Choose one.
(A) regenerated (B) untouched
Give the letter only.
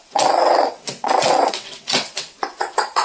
A